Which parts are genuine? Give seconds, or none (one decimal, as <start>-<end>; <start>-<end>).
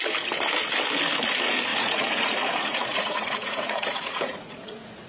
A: 0.0-1.7